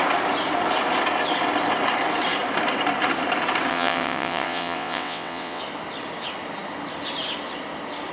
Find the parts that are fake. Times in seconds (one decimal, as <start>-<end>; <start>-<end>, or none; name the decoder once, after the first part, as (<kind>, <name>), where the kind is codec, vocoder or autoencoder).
3.7-5.6 (vocoder, WaveNeXt)